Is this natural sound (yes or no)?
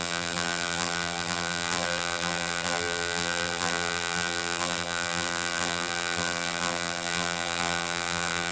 no